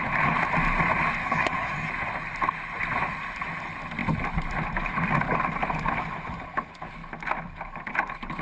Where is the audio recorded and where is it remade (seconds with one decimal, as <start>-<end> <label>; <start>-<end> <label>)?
0.0-1.2 recorded; 1.2-1.9 remade; 1.9-8.4 recorded